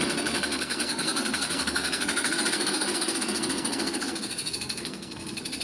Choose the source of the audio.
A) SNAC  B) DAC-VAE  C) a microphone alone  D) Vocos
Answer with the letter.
A